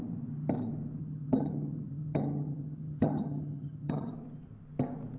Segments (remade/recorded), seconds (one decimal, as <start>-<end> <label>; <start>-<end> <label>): 0.0-1.0 recorded; 1.0-4.1 remade; 4.1-5.2 recorded